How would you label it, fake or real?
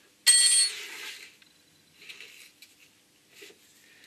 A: real